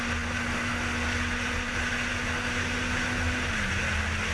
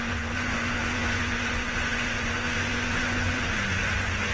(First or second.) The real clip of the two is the first